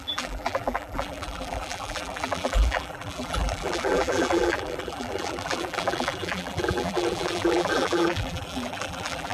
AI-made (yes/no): yes